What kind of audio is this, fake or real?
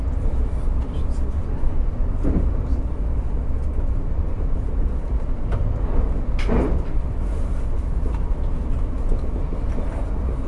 real